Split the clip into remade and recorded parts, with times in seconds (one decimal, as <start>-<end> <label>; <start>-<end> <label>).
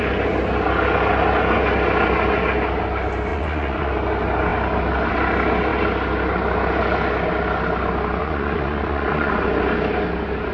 0.0-3.3 recorded; 3.3-3.9 remade; 3.9-8.2 recorded; 8.2-9.3 remade; 9.3-10.5 recorded